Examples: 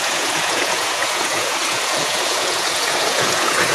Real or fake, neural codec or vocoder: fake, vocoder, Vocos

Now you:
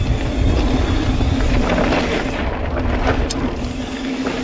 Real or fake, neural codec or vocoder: real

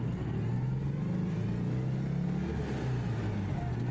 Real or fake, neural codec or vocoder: real